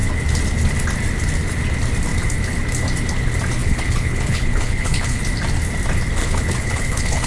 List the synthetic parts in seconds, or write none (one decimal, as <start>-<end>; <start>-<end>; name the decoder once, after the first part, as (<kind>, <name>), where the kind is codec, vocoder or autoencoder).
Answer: 3.6-5.2 (codec, HILCodec); 6.2-7.3